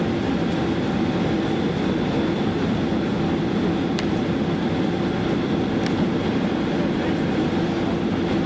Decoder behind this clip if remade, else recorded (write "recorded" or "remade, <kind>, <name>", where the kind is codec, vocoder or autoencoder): recorded